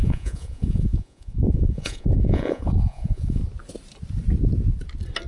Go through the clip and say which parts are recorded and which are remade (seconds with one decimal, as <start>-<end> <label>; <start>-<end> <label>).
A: 0.0-3.4 remade; 3.4-5.3 recorded